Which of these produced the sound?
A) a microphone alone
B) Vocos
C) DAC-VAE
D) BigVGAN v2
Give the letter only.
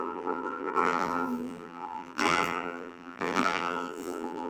D